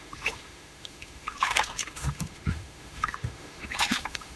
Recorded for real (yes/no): no